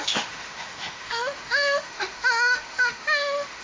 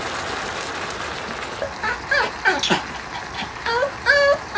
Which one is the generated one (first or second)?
first